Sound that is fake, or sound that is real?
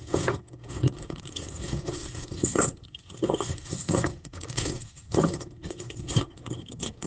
fake